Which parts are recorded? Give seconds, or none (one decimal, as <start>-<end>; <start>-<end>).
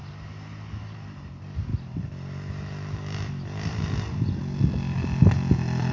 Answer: 1.1-1.7; 4.4-5.9